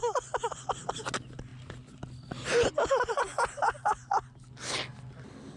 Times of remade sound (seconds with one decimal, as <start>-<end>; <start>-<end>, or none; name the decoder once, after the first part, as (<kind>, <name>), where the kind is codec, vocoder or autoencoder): none